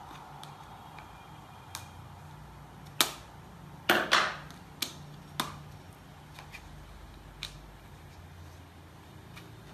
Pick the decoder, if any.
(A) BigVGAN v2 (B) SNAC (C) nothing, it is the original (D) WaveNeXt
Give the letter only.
C